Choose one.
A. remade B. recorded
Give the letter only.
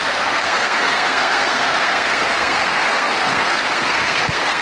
A